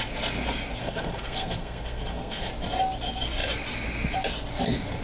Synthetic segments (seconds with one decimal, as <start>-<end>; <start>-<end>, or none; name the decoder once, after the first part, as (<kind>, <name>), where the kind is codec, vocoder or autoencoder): 0.8-2.5 (codec, SNAC)

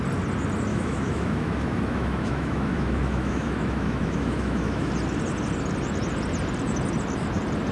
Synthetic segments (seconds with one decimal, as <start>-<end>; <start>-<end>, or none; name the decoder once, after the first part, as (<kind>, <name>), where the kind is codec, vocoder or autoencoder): 0.7-4.9 (autoencoder, DAC-VAE)